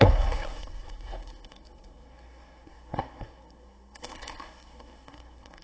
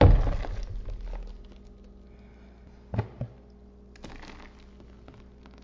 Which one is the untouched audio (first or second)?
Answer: second